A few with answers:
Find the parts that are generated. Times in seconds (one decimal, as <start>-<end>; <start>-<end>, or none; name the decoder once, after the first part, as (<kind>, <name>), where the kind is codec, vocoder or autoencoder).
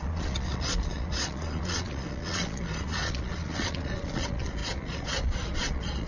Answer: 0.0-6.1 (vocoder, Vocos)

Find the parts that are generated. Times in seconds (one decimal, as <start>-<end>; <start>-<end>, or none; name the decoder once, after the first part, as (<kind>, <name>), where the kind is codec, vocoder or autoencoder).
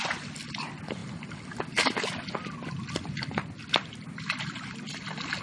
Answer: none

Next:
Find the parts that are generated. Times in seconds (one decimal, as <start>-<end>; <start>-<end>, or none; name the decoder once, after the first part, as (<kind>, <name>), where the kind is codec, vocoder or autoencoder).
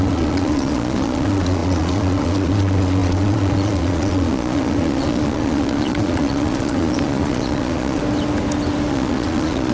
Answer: 0.0-8.0 (vocoder, Vocos); 8.9-9.7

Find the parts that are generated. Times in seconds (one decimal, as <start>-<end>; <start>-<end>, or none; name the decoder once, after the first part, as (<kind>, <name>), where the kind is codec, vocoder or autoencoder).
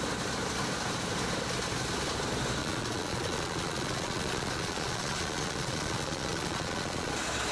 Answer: 2.6-7.1 (vocoder, Vocos)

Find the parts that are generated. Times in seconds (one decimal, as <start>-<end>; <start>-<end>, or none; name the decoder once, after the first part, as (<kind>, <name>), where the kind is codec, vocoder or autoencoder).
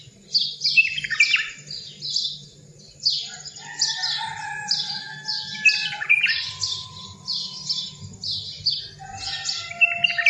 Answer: 5.8-6.5 (vocoder, Vocos)